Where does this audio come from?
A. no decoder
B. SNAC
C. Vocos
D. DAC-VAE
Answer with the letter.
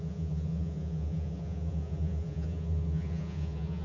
C